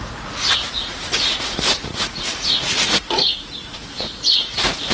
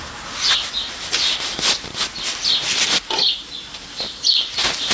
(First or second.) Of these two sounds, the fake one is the first